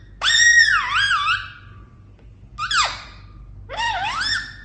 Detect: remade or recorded recorded